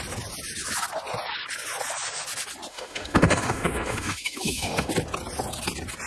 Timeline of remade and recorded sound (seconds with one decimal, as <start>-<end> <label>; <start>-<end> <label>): 0.0-2.7 recorded; 2.7-4.9 remade; 4.9-6.1 recorded